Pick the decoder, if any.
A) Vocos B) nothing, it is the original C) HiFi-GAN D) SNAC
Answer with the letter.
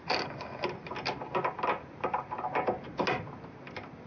B